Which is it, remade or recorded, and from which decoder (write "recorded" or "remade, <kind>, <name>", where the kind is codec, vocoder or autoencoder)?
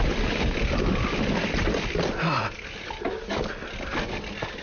recorded